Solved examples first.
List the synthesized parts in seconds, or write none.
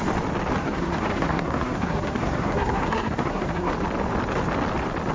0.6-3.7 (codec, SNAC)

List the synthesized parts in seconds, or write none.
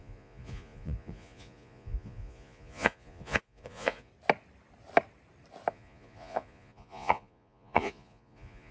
0.0-4.1 (vocoder, Vocos); 5.7-8.7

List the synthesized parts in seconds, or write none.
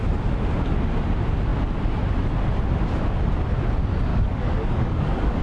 4.1-5.4 (codec, DAC)